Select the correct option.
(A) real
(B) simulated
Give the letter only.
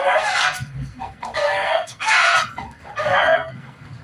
B